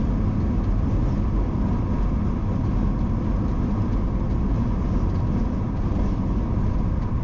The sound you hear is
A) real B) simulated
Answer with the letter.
A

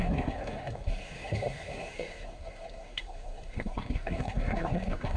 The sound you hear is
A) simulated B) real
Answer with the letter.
A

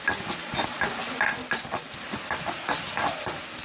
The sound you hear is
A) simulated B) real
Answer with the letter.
B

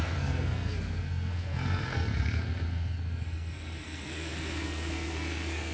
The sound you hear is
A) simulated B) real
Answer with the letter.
A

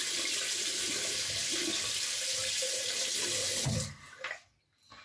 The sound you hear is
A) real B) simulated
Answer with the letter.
A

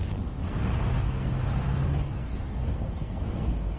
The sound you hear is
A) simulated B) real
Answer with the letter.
A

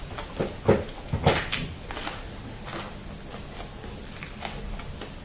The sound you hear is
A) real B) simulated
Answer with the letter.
A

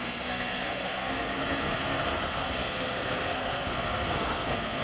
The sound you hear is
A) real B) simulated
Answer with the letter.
B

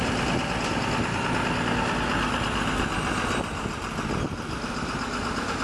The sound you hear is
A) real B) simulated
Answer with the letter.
A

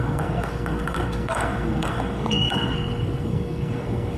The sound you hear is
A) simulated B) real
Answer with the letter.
A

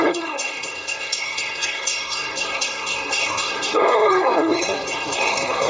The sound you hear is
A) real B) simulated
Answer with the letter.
B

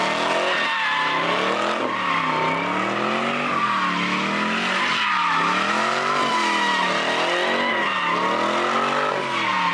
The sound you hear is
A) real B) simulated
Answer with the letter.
A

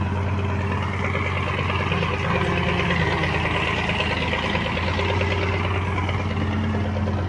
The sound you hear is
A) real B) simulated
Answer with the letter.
A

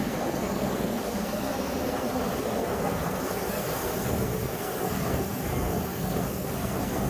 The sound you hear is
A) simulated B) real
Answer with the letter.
A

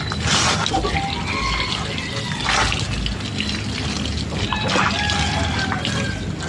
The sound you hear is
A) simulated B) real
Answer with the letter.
B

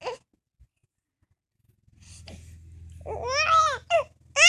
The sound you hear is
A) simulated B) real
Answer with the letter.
B